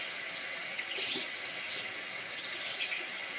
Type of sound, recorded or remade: remade